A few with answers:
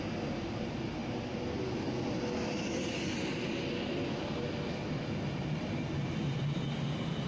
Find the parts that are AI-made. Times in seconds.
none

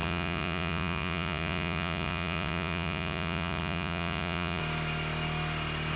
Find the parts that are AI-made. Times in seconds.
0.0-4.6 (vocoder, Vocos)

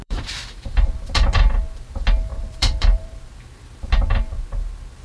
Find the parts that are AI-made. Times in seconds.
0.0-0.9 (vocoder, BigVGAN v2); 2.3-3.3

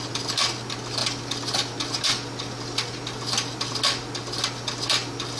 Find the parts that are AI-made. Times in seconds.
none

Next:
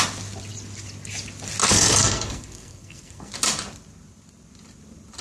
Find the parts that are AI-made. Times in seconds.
1.6-3.3 (codec, SNAC)

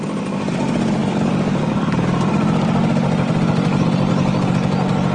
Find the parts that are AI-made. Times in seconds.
none